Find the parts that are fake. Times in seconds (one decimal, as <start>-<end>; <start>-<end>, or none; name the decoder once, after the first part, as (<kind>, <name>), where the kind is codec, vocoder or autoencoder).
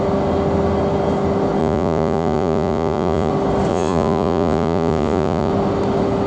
1.6-3.3 (vocoder, Vocos); 3.7-5.5